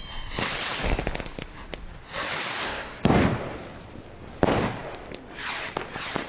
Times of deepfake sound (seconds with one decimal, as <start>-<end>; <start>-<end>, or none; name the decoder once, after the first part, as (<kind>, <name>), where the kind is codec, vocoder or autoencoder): 2.6-3.2 (codec, SNAC)